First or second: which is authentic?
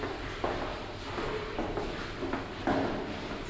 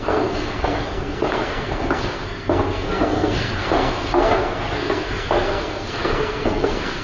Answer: first